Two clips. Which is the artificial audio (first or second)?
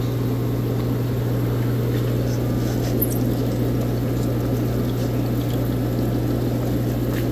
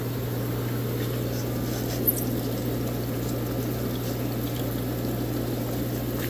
second